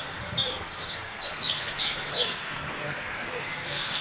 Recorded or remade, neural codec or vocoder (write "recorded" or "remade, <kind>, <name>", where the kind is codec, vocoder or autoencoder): remade, codec, SNAC